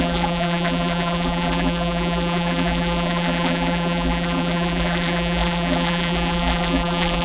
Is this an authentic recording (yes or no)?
no